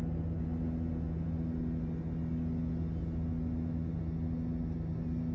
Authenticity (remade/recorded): recorded